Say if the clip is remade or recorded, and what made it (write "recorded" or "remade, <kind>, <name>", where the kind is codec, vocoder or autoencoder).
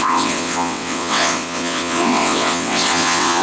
remade, vocoder, WaveNeXt